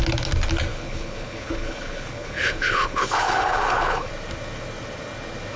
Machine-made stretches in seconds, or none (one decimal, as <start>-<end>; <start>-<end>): 0.7-4.1